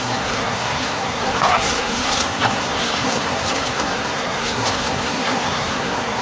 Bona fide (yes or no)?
no